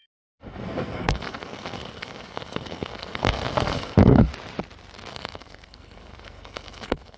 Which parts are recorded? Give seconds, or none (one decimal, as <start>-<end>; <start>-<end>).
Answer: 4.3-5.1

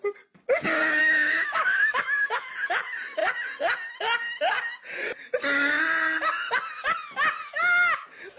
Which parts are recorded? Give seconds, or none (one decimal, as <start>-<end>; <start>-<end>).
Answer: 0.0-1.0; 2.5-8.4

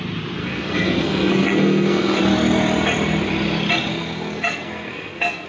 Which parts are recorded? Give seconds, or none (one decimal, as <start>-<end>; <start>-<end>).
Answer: 0.0-0.4; 2.2-3.9

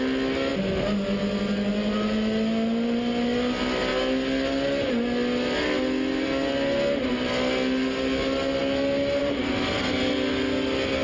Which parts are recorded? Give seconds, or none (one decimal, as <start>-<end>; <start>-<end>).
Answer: 0.0-11.0